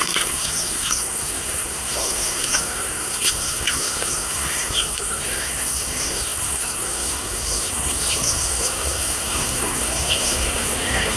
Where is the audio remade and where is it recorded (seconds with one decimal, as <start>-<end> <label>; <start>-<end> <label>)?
0.0-11.2 remade